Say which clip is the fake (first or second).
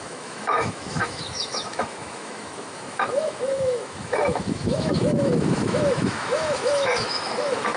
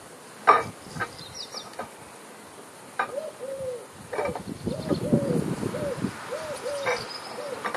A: first